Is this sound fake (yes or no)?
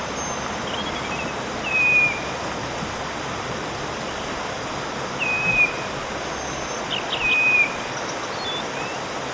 no